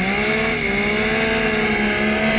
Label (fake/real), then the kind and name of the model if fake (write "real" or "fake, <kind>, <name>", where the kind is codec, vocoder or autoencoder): real